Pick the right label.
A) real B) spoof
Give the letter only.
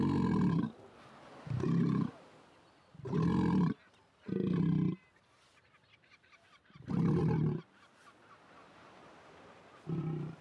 A